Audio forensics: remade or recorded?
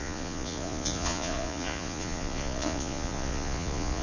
remade